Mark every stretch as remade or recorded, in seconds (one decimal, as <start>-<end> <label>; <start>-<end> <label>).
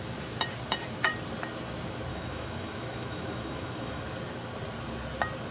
0.0-2.1 recorded; 2.1-4.0 remade; 4.0-5.5 recorded